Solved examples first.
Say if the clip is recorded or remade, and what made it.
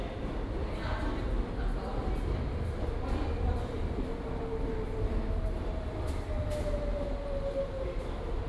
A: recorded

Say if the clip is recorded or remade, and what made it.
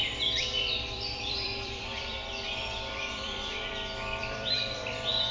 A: remade, vocoder, BigVGAN v2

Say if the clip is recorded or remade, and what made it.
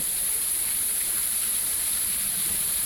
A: remade, vocoder, BigVGAN v2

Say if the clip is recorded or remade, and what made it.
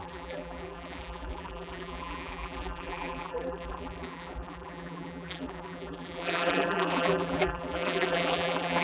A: remade, vocoder, BigVGAN v2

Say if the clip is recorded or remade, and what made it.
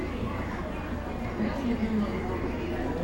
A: recorded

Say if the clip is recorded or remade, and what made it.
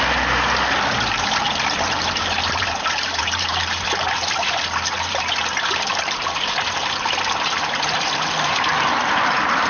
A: remade, vocoder, BigVGAN v2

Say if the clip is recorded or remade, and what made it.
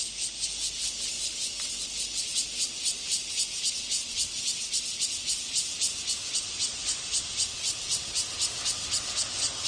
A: recorded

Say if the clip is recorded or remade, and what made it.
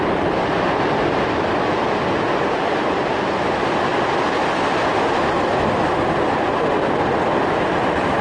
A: recorded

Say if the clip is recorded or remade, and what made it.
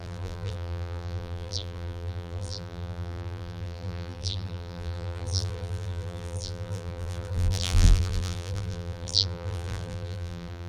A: remade, vocoder, BigVGAN v2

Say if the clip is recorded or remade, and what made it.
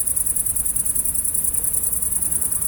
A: recorded